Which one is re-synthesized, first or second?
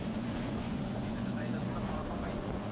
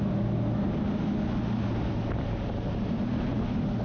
first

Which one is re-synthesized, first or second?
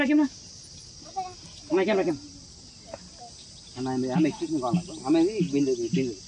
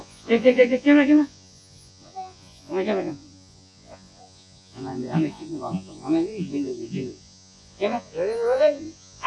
second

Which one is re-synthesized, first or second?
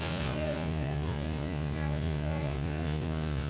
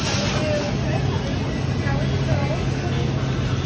first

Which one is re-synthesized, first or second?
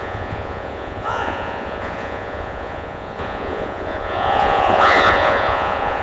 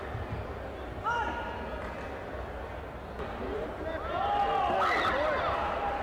first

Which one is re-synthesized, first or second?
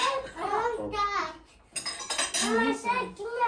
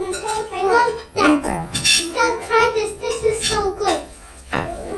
second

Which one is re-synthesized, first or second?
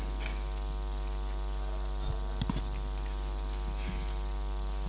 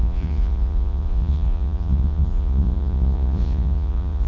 second